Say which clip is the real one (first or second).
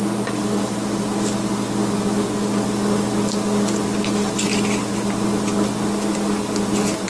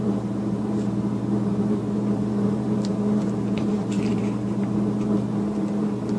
first